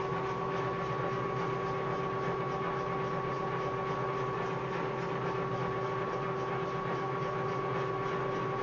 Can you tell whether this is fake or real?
real